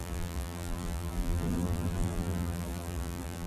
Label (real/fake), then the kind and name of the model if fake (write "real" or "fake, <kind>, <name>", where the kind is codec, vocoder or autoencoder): fake, vocoder, BigVGAN v2